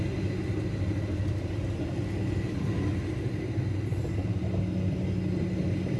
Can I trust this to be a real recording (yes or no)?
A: yes